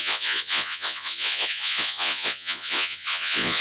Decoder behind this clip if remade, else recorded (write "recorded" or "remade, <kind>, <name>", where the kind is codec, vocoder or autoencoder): remade, vocoder, Vocos